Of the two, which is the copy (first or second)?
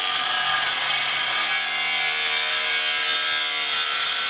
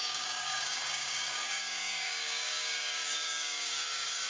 second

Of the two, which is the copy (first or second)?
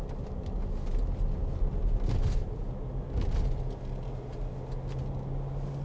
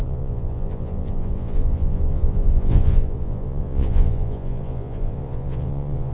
second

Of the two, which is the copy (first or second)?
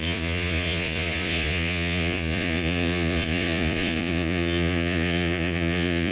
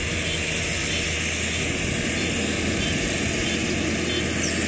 first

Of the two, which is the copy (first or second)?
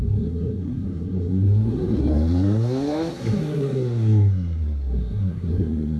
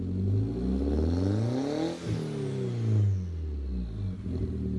first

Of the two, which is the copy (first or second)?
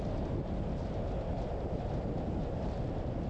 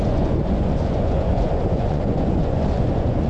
second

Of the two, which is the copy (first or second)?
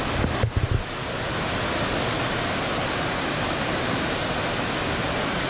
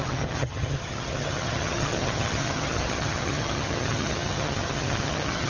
second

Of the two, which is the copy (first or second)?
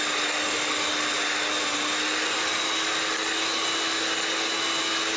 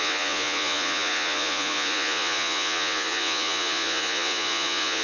second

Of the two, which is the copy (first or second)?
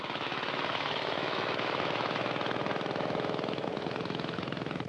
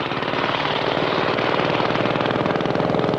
first